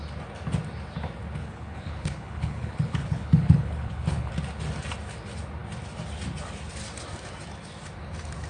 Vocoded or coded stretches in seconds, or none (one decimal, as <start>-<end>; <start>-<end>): 1.4-4.3